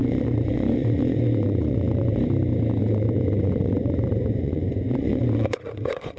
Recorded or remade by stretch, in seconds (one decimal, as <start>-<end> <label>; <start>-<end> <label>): 0.0-2.2 remade; 2.2-2.8 recorded; 2.8-6.2 remade